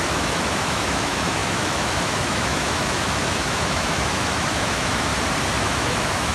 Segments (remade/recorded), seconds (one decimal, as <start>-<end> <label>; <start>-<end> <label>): 0.0-5.1 remade; 5.1-5.6 recorded; 5.6-6.3 remade